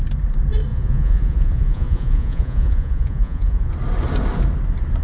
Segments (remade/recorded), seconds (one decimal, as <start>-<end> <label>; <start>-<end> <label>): 0.0-0.7 recorded; 0.7-3.7 remade; 3.7-5.0 recorded